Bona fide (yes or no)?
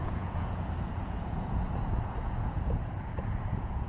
no